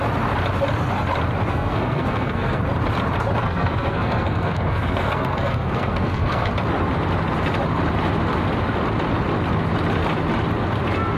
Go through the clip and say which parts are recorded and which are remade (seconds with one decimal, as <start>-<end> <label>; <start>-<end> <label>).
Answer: 0.0-1.5 recorded; 1.5-2.6 remade; 2.6-3.4 recorded; 3.4-6.5 remade; 6.5-11.2 recorded